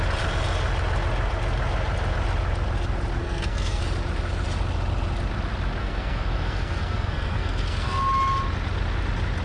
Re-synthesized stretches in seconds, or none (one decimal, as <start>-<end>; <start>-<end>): 3.2-3.8; 5.8-8.0